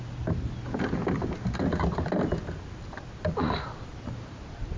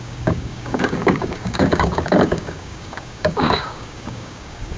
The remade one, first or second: second